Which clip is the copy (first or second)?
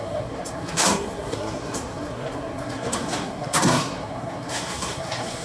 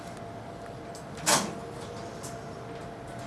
first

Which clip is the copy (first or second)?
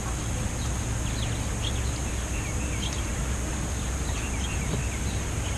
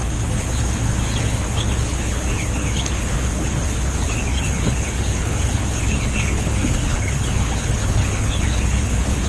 second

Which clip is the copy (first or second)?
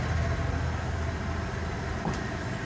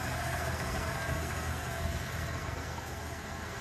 second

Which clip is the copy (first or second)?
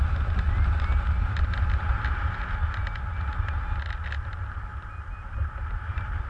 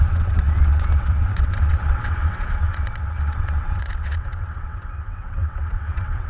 second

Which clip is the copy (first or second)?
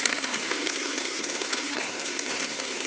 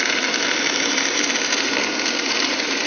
first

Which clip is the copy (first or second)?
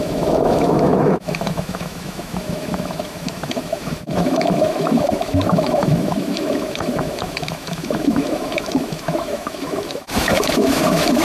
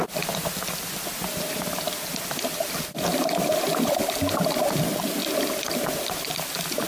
first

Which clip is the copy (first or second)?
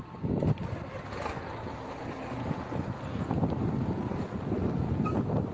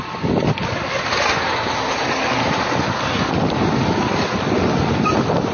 second